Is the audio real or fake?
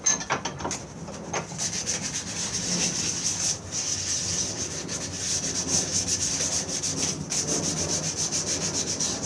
real